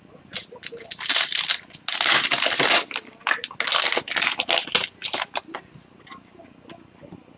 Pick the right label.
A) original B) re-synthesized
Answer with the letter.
A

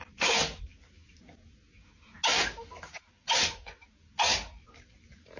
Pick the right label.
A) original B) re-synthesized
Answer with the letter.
A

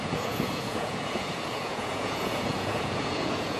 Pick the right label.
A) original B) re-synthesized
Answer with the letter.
B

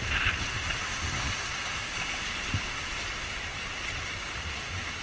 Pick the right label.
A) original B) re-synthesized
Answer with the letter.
A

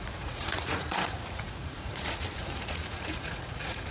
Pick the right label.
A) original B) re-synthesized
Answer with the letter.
B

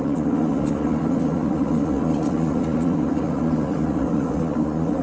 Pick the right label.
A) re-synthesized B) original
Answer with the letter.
A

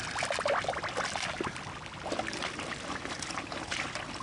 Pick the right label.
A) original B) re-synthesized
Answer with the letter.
A